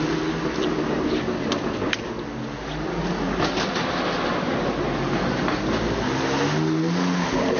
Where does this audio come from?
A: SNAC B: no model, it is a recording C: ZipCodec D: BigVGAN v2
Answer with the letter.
B